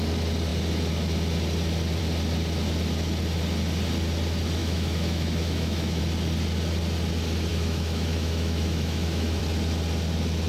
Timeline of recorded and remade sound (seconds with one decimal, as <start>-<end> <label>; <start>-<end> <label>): 0.0-4.6 recorded; 4.6-6.0 remade; 6.0-7.5 recorded; 7.5-9.4 remade; 9.4-10.5 recorded